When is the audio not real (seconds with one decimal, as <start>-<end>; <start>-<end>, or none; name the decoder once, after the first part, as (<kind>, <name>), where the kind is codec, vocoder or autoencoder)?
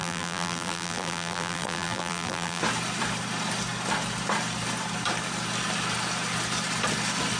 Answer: 0.0-2.6 (vocoder, BigVGAN v2)